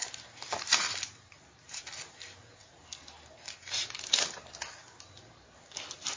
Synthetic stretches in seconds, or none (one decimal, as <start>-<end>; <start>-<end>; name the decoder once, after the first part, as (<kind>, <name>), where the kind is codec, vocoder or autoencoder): none